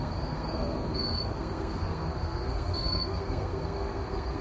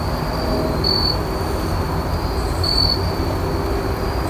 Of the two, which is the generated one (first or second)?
first